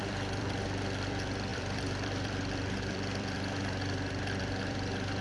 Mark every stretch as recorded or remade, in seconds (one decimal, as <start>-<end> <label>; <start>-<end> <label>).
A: 0.0-5.2 remade